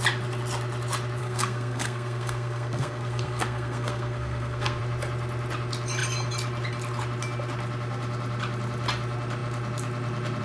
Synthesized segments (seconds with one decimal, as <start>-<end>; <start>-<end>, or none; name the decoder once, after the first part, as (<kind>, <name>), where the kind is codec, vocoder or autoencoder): 1.2-4.8 (codec, SNAC)

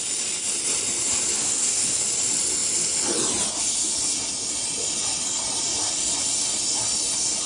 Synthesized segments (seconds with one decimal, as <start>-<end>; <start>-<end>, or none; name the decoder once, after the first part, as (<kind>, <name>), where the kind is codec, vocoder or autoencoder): 1.4-2.0 (codec, SNAC)

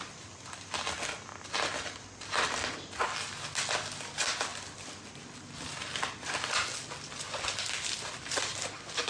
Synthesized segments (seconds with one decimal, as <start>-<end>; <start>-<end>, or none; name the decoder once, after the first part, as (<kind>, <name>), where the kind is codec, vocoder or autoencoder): none

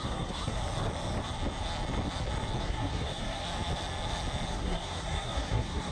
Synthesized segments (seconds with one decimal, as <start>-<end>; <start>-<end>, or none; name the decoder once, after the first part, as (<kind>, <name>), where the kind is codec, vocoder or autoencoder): 0.0-0.6 (codec, SNAC); 2.6-3.4; 4.5-5.9

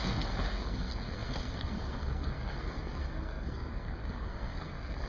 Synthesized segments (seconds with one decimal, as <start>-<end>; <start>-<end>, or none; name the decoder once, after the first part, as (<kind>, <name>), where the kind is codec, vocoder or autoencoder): 0.0-5.1 (codec, SNAC)

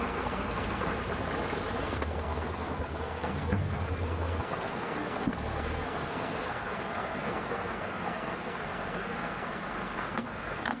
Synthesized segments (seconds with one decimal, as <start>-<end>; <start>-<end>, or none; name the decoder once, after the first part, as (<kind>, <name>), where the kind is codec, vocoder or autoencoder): 0.0-0.9 (codec, SNAC); 1.8-10.8

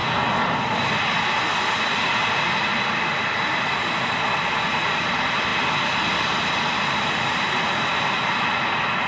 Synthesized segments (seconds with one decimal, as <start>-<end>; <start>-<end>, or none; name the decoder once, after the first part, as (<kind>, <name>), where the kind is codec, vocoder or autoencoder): none

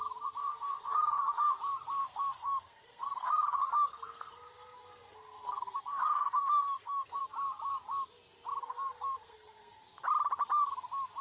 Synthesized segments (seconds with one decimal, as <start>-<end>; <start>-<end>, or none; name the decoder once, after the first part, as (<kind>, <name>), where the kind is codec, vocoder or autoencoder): 0.4-1.6 (codec, SNAC); 2.0-7.2; 8.6-9.8